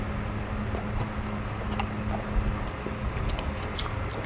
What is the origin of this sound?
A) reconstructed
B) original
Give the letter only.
B